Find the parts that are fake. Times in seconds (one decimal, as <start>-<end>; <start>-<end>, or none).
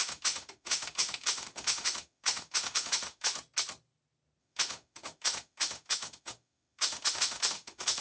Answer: 0.0-3.3; 4.4-8.0